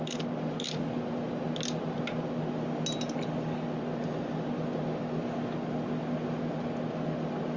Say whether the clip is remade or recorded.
recorded